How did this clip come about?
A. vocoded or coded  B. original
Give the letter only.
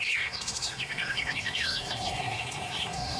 A